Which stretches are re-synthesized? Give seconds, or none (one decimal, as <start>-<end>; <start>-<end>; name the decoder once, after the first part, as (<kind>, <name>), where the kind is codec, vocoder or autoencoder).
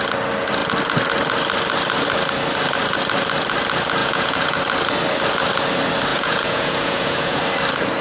4.0-4.6 (vocoder, Vocos); 6.1-7.4